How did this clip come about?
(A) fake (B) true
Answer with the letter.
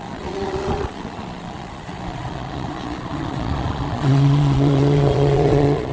A